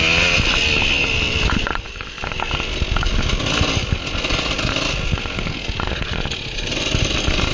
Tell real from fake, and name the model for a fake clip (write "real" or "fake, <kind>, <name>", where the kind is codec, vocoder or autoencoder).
real